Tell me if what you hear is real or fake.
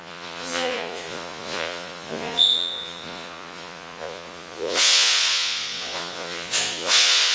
fake